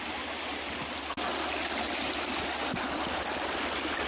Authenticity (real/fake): real